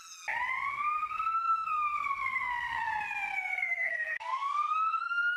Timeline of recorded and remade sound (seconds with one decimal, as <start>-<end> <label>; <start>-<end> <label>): 0.0-0.7 recorded; 0.7-2.9 remade; 2.9-3.5 recorded; 3.5-5.4 remade